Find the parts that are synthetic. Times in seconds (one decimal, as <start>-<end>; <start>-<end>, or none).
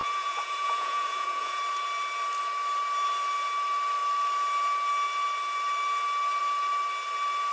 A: 0.0-1.6